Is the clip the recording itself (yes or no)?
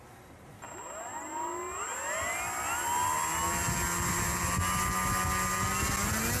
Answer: yes